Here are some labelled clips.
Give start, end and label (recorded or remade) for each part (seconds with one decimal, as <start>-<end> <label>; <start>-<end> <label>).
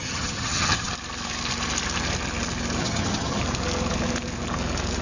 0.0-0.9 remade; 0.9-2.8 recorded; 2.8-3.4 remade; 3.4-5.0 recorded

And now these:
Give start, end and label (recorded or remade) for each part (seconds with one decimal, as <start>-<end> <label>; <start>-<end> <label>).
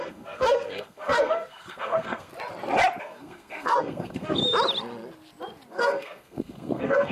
0.0-2.3 remade; 2.3-3.0 recorded; 3.0-4.4 remade; 4.4-5.7 recorded; 5.7-7.1 remade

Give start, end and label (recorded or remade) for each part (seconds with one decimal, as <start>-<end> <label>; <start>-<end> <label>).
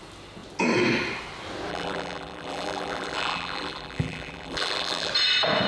0.0-1.7 recorded; 1.7-5.1 remade; 5.1-5.7 recorded